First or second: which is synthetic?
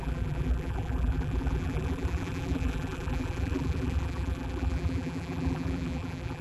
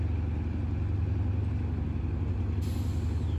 first